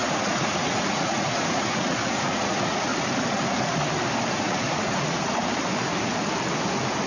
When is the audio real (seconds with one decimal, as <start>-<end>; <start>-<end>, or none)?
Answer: 2.9-4.3; 5.5-7.1